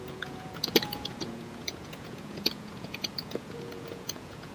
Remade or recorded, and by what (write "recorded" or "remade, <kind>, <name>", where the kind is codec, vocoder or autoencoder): remade, vocoder, Vocos